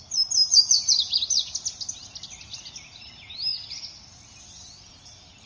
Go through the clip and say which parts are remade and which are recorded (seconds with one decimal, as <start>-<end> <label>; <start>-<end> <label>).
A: 0.0-5.5 recorded